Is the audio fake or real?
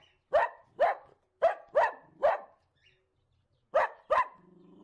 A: real